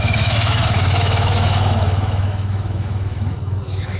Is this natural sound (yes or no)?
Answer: no